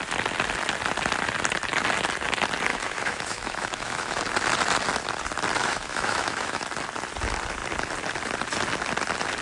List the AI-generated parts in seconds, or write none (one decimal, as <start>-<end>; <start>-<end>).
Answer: 2.7-4.2; 5.6-6.6